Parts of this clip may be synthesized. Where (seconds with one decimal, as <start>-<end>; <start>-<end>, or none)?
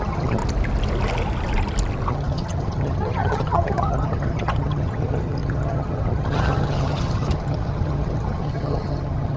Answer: 0.0-0.4; 2.1-9.4